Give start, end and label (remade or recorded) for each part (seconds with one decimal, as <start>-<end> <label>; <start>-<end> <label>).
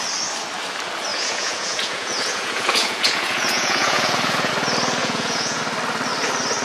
0.0-1.1 recorded; 1.1-4.5 remade; 4.5-5.0 recorded; 5.0-5.6 remade; 5.6-6.6 recorded